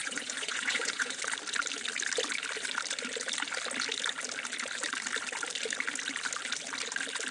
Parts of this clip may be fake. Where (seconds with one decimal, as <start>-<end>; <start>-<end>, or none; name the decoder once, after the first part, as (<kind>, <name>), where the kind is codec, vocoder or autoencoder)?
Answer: 0.0-1.2 (vocoder, Vocos)